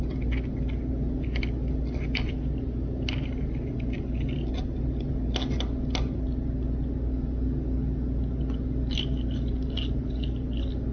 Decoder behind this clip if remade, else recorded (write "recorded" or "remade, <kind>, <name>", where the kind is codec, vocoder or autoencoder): recorded